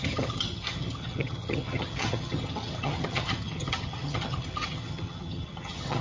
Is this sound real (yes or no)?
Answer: no